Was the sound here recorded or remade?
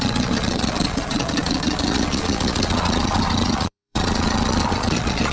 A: remade